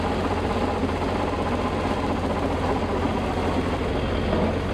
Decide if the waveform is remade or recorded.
recorded